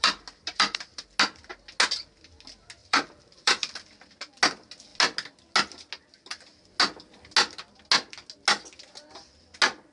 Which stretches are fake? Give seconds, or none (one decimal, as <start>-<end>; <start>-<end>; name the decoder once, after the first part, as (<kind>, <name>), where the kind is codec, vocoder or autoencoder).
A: 0.0-0.8 (vocoder, BigVGAN v2); 2.8-3.8